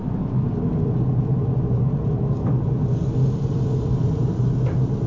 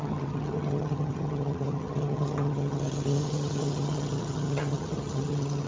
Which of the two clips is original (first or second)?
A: first